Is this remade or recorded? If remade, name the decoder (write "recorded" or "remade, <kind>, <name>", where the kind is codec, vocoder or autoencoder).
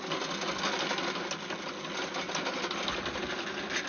recorded